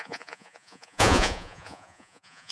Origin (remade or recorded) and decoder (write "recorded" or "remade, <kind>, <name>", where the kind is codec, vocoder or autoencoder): remade, vocoder, Vocos